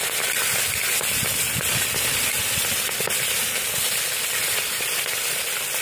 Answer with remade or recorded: recorded